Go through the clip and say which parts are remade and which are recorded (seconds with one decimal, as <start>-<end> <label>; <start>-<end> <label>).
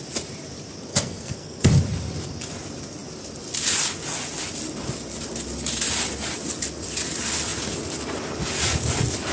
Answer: 0.0-0.9 recorded; 0.9-1.8 remade; 1.8-9.3 recorded